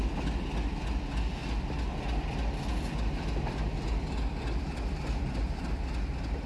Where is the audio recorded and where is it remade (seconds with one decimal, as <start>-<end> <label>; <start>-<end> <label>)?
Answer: 0.0-6.5 recorded